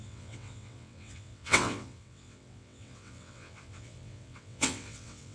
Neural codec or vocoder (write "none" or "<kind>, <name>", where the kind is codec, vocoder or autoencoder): vocoder, WaveNeXt